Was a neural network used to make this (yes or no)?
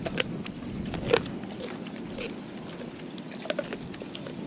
no